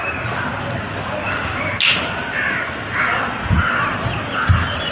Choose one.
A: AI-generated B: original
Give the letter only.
B